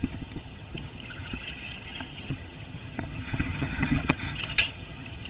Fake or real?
fake